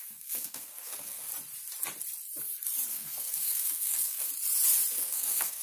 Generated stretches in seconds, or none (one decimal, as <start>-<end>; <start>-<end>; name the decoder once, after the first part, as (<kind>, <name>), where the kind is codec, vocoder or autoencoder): 0.0-1.3 (codec, SNAC); 2.9-4.3; 4.9-5.6